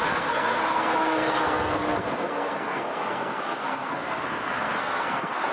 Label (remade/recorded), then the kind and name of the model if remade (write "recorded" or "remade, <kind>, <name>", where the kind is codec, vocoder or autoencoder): remade, codec, SNAC